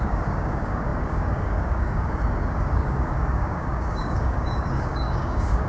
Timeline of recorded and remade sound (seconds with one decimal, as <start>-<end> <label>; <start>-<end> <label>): 0.0-5.7 remade